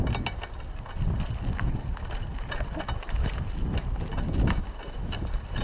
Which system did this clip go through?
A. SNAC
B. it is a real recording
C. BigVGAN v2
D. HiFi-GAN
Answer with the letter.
B